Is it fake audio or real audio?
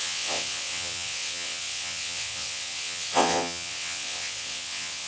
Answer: fake